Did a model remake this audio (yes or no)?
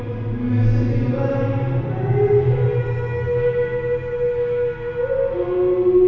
no